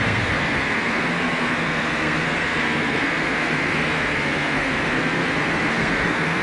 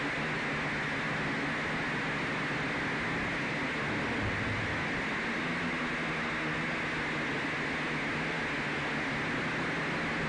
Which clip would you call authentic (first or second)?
second